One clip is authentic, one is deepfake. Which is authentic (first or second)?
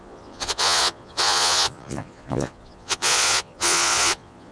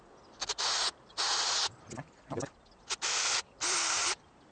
second